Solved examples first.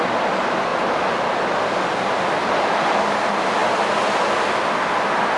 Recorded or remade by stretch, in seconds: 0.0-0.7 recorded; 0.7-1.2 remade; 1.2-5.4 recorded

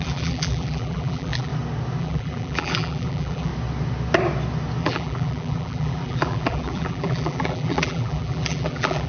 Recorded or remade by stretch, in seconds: 0.0-1.5 remade; 1.5-2.0 recorded; 2.0-3.5 remade; 3.5-4.8 recorded; 4.8-9.1 remade

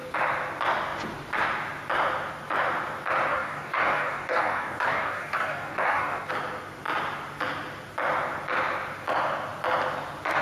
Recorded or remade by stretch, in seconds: 0.0-3.3 recorded; 3.3-6.3 remade; 6.3-10.4 recorded

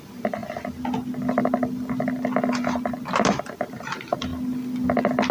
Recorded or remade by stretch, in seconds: 0.0-0.4 remade; 0.4-3.4 recorded; 3.4-4.3 remade; 4.3-5.3 recorded

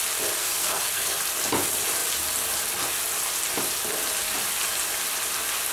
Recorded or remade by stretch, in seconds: 0.0-0.4 recorded; 0.4-1.2 remade; 1.2-5.7 recorded

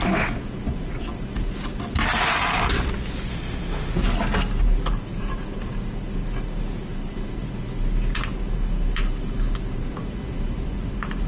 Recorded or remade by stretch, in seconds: 0.0-3.3 recorded; 3.3-3.9 remade; 3.9-11.3 recorded